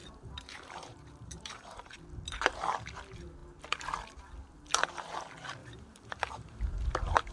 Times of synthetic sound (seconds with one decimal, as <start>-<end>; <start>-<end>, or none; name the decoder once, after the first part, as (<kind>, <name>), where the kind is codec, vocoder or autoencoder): 0.0-2.0 (vocoder, BigVGAN v2); 5.6-6.7